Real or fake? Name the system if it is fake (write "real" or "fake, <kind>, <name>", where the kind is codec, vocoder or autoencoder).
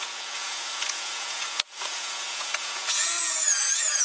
fake, vocoder, Vocos